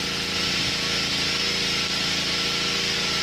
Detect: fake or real real